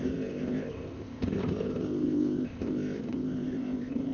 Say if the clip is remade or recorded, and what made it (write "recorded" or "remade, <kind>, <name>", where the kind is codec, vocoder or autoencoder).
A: remade, codec, ZipCodec